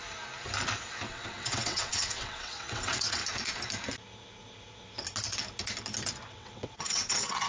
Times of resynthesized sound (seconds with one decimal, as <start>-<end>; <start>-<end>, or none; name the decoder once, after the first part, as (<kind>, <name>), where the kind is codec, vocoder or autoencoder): 1.1-3.2 (vocoder, WaveNeXt); 6.3-7.5